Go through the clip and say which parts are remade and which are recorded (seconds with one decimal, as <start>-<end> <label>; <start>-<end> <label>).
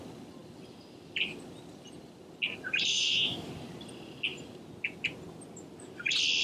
0.0-2.9 recorded; 2.9-3.5 remade; 3.5-6.4 recorded